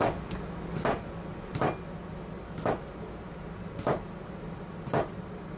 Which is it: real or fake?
real